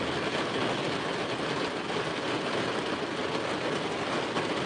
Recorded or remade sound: recorded